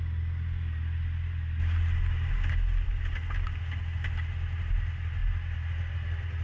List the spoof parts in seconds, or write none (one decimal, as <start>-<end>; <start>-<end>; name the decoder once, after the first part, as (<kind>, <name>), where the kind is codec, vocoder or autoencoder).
none